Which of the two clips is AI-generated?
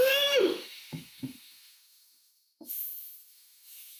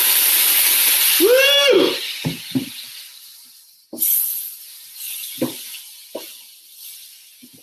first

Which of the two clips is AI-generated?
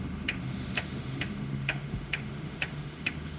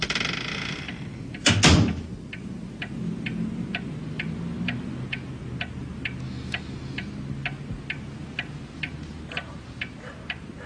first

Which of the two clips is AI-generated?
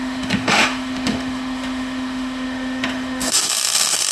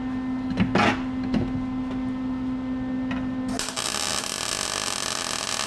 first